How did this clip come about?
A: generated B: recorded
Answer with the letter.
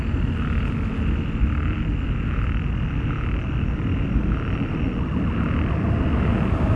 B